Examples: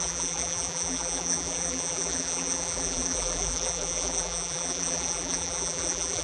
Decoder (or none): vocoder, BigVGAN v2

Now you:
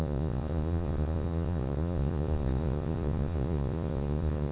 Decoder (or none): vocoder, Vocos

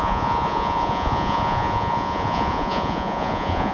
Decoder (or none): vocoder, Vocos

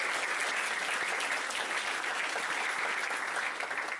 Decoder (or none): none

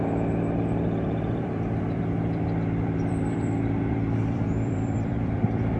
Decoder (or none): vocoder, BigVGAN v2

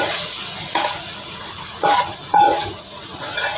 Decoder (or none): vocoder, Vocos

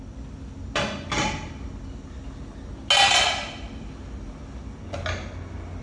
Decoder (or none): none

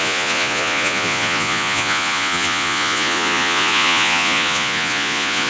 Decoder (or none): vocoder, Vocos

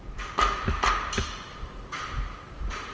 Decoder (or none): none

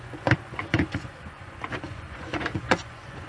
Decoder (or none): vocoder, Vocos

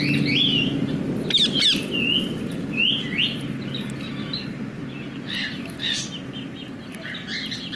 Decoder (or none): none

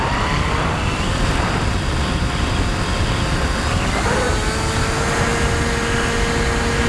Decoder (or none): none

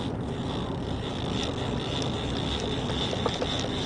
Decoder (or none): none